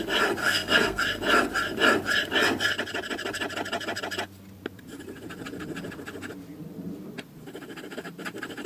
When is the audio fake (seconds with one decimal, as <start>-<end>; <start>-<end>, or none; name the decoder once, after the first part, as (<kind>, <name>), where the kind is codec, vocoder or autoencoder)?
0.4-1.0 (codec, SNAC)